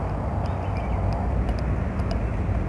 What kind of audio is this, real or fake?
real